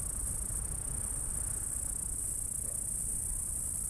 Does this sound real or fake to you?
real